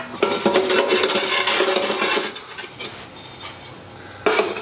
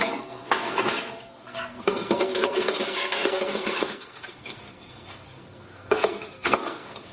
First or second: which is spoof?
second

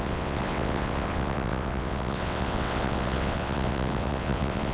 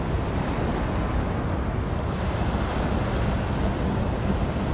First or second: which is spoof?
first